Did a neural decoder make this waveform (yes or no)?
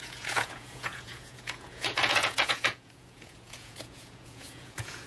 yes